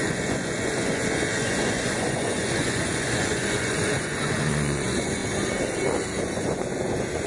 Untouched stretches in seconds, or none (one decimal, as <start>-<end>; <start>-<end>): 5.2-6.2